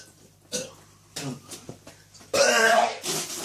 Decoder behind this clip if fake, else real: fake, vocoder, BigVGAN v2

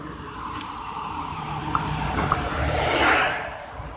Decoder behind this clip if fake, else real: fake, vocoder, BigVGAN v2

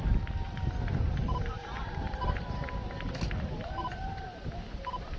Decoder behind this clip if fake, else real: fake, vocoder, BigVGAN v2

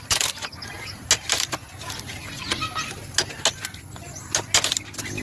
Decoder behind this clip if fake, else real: real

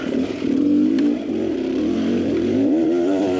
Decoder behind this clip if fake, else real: fake, vocoder, BigVGAN v2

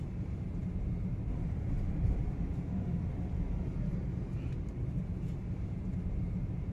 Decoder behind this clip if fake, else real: fake, vocoder, BigVGAN v2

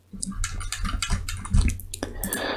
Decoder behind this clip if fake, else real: real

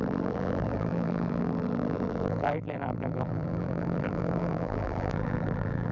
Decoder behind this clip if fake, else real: fake, vocoder, BigVGAN v2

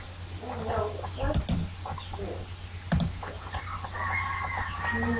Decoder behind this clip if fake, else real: real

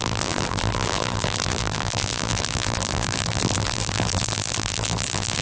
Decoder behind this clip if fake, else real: fake, vocoder, BigVGAN v2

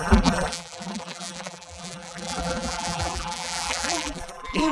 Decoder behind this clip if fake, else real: fake, vocoder, BigVGAN v2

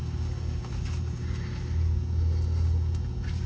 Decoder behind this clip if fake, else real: real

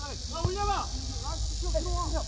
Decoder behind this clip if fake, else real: real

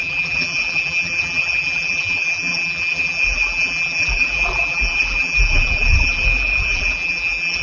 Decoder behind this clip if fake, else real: fake, vocoder, BigVGAN v2